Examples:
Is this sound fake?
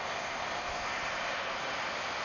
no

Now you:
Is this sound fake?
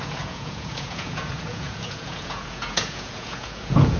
yes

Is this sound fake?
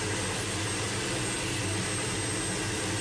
no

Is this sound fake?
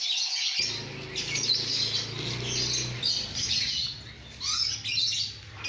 no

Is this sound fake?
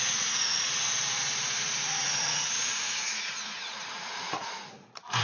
yes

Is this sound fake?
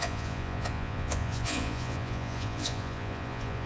yes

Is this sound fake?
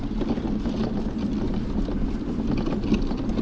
no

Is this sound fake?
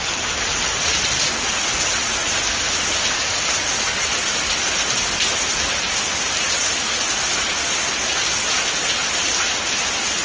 no